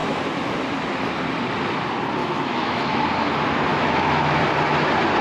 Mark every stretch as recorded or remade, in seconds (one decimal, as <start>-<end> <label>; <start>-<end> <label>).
0.0-2.2 recorded; 2.2-3.0 remade; 3.0-3.7 recorded; 3.7-4.4 remade; 4.4-5.2 recorded